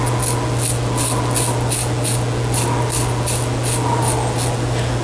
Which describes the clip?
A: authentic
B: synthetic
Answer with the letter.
A